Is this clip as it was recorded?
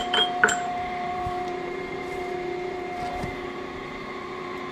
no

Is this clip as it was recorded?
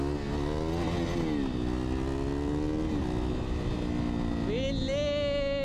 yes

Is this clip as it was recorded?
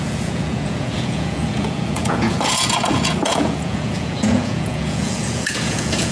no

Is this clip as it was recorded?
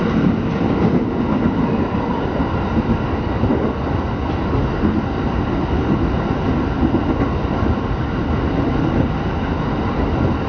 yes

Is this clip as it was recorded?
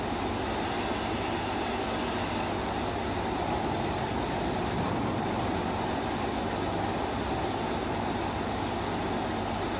yes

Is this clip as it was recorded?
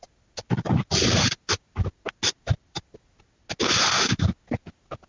yes